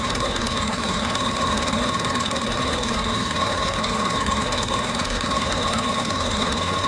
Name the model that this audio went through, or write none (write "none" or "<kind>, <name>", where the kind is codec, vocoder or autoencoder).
codec, SNAC